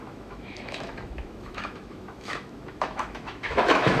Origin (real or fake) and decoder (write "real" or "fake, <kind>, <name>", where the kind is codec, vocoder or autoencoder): fake, autoencoder, DAC-VAE